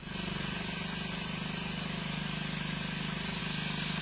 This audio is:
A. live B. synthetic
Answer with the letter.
A